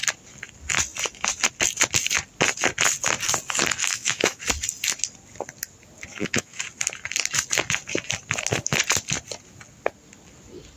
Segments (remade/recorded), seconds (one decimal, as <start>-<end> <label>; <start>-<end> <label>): 0.0-3.8 recorded; 3.8-4.4 remade; 4.4-6.1 recorded; 6.1-6.6 remade; 6.6-10.8 recorded